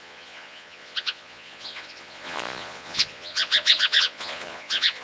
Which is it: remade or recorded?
remade